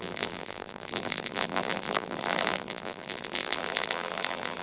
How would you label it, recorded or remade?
remade